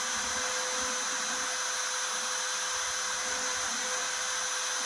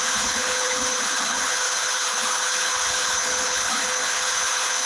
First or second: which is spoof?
second